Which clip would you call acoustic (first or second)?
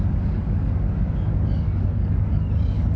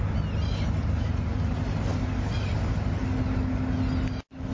second